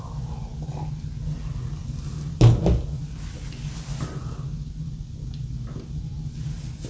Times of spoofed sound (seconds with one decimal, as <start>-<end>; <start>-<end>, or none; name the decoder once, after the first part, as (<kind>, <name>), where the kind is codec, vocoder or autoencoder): none